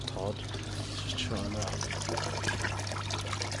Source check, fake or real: real